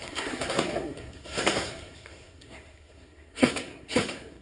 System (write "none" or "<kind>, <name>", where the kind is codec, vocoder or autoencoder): codec, SNAC